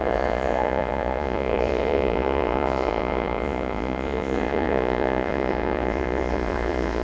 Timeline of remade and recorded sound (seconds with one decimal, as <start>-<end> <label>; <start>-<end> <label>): 0.0-7.0 remade